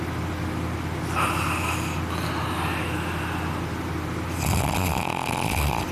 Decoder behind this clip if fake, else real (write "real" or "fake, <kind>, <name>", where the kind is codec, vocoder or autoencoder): real